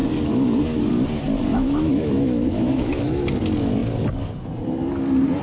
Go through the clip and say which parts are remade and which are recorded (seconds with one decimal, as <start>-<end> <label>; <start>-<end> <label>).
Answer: 0.0-1.5 recorded; 1.5-3.2 remade; 3.2-5.4 recorded